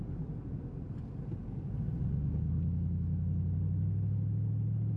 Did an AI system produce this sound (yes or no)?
no